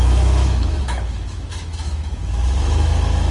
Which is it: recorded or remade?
remade